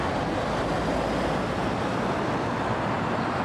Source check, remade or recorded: recorded